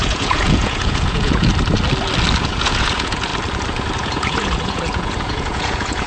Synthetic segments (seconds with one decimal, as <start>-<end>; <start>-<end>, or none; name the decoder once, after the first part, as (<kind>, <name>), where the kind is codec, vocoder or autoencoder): 0.0-1.5 (vocoder, Vocos); 2.4-3.3; 4.0-6.1

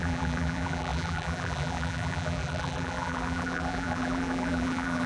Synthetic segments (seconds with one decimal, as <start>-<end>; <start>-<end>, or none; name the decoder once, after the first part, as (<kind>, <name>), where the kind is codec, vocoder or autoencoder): 0.0-5.1 (vocoder, BigVGAN v2)

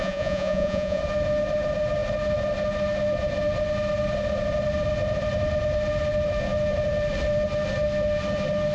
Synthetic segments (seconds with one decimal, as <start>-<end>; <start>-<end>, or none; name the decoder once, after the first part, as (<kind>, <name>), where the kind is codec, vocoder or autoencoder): 0.0-1.0 (vocoder, Vocos)

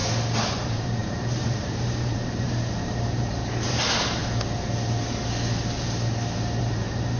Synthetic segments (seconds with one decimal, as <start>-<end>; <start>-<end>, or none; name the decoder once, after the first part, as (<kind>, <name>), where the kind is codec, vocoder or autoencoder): 0.5-4.2 (vocoder, BigVGAN v2); 6.6-7.2

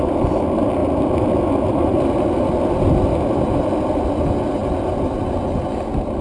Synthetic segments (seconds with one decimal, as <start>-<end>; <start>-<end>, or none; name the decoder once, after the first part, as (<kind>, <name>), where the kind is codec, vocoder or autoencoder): none